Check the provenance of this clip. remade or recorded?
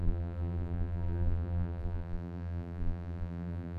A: remade